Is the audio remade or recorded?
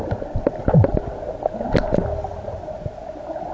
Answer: recorded